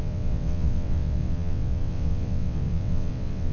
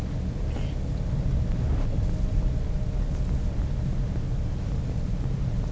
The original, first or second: second